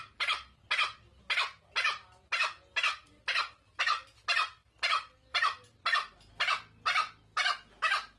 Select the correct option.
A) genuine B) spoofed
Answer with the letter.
A